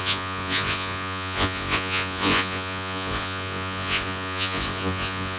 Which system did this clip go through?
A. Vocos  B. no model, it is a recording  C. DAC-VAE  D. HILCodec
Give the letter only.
A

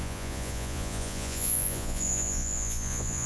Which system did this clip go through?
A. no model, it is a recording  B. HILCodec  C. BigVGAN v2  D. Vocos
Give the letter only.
D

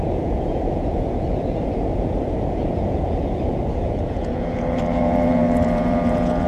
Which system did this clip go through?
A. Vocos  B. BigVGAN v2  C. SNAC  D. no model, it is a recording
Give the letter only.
A